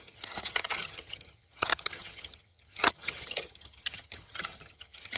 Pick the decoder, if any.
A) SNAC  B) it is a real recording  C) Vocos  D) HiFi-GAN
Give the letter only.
D